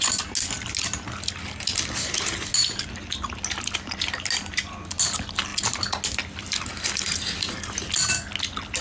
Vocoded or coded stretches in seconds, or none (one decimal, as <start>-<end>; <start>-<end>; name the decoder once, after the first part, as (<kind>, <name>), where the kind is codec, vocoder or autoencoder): none